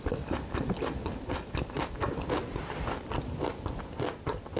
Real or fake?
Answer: real